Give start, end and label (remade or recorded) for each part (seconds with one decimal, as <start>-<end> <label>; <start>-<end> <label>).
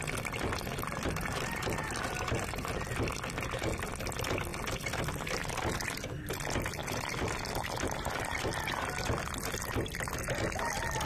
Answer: 0.0-6.8 recorded; 6.8-9.7 remade; 9.7-11.1 recorded